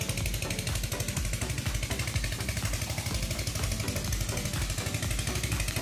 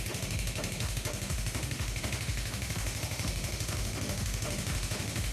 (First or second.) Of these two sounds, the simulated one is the second